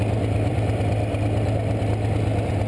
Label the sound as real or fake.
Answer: fake